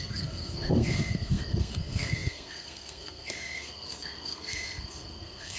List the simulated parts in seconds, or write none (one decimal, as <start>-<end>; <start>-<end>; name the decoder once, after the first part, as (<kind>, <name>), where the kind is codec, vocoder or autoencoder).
0.0-5.6 (codec, SNAC)

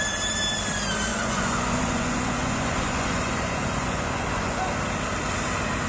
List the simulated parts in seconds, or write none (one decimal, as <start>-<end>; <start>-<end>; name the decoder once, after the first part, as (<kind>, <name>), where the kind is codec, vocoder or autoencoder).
1.1-4.6 (vocoder, Vocos)

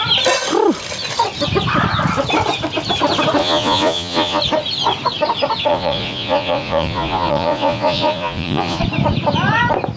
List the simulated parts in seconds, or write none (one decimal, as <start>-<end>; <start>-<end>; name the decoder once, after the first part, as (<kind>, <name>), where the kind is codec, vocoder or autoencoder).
3.4-4.4 (vocoder, Vocos); 5.7-8.8

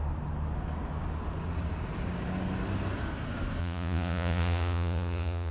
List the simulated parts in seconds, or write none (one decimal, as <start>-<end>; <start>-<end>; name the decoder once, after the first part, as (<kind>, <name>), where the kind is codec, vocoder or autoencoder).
3.6-5.5 (vocoder, Vocos)

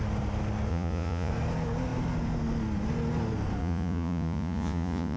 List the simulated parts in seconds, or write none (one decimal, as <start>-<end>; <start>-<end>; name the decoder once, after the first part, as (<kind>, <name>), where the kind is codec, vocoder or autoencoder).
0.7-1.3 (vocoder, Vocos); 3.6-5.2

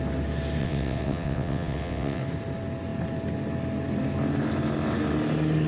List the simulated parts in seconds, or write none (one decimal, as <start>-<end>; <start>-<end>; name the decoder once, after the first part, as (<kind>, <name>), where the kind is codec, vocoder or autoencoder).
0.6-2.2 (vocoder, WaveNeXt)

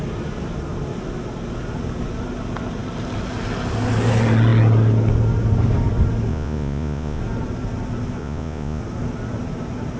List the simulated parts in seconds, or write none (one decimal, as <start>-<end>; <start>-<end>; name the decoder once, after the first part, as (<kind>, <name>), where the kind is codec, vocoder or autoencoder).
6.3-7.2 (vocoder, Vocos); 8.2-8.8

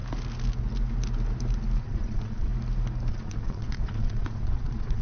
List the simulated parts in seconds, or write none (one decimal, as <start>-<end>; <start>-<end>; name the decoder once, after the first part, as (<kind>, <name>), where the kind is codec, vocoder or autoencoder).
1.8-2.5 (vocoder, Vocos); 3.1-5.0